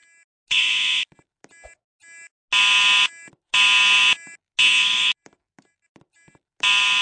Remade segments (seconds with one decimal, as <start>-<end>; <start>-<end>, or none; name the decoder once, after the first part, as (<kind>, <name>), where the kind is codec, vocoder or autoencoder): none